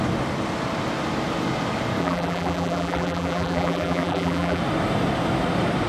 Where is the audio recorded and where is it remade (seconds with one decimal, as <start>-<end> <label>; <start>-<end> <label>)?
0.0-2.0 recorded; 2.0-4.6 remade; 4.6-5.9 recorded